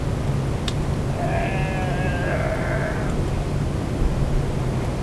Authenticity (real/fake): real